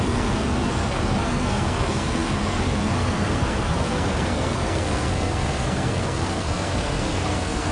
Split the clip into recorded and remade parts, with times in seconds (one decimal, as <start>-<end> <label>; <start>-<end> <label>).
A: 0.0-7.7 remade